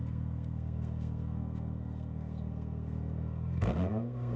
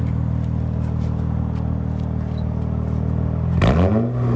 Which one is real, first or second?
second